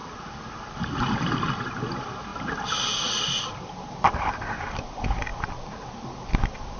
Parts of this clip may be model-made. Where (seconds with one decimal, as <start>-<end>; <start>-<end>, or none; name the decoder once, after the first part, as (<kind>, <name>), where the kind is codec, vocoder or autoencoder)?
0.0-2.3 (vocoder, BigVGAN v2); 3.9-6.8